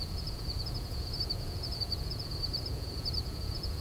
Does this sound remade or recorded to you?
remade